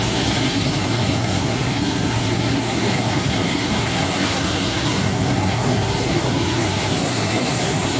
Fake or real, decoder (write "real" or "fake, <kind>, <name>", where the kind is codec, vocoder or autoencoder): fake, codec, SNAC